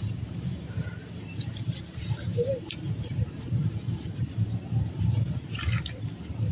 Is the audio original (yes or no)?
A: no